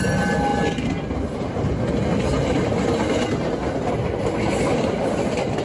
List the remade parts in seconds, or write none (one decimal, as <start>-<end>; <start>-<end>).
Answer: none

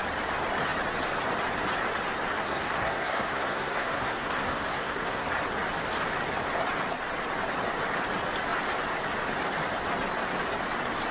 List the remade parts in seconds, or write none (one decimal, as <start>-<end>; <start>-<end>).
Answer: 2.3-5.3

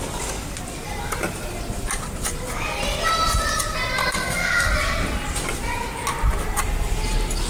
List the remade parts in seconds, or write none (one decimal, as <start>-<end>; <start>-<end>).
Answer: 4.0-4.7

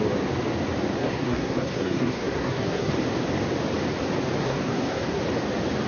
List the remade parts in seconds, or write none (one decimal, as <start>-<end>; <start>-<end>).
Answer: 1.0-2.9; 4.4-5.2

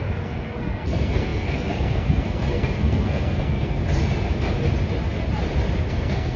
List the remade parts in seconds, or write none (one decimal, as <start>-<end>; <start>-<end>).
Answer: 0.0-3.8; 5.9-6.4

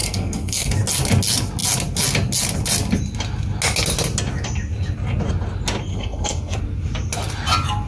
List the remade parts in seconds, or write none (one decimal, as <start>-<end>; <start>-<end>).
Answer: 0.0-0.7; 5.9-6.6